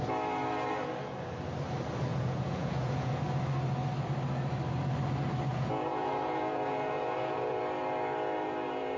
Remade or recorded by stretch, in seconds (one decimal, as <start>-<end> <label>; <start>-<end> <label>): 0.0-2.1 recorded; 2.1-3.2 remade; 3.2-5.5 recorded; 5.5-7.6 remade; 7.6-9.0 recorded